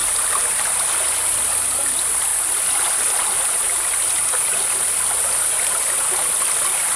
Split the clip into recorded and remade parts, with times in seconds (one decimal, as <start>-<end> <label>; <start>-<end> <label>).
0.0-0.6 remade; 0.6-7.0 recorded